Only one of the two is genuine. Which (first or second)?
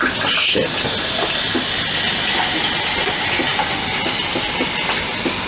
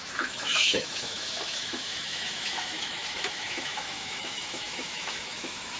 first